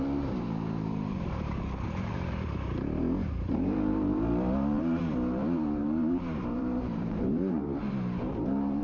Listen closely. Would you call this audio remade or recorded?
remade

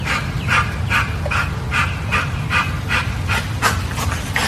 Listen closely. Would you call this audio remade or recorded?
recorded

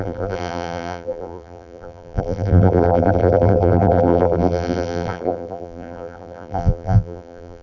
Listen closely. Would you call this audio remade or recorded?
remade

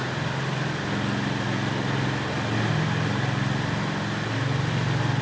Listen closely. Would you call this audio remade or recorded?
recorded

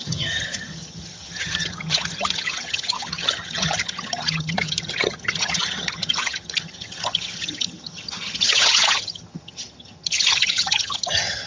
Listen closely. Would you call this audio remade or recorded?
remade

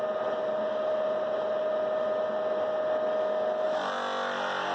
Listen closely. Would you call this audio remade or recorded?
recorded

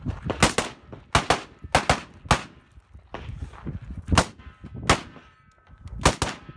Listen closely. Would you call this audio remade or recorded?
recorded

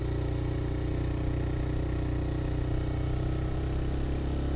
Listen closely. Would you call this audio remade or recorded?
recorded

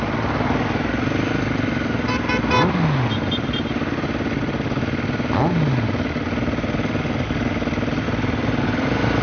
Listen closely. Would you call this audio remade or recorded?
recorded